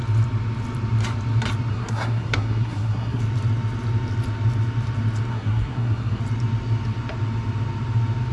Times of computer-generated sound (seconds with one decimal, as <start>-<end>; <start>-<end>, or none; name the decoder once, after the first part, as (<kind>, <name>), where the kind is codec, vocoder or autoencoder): 1.7-3.2 (codec, SNAC); 5.3-6.2